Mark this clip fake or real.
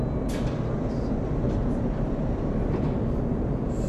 real